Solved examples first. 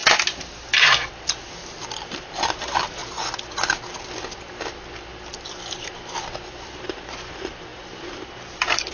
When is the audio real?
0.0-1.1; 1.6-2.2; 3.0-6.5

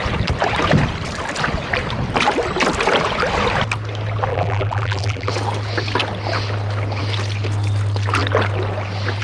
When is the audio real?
0.0-4.3; 5.3-9.2

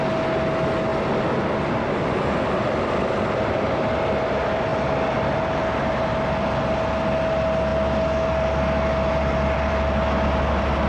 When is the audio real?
0.0-0.9; 4.0-10.9

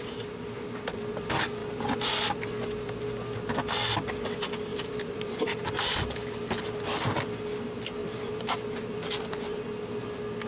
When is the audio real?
0.0-4.7; 6.7-8.0; 9.6-10.5

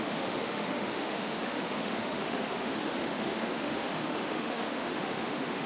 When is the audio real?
none

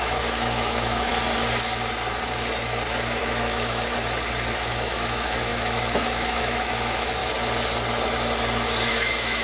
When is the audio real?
1.1-3.2; 3.9-4.5; 7.2-8.9